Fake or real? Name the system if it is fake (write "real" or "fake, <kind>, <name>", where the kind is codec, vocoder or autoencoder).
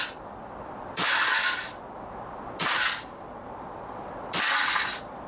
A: real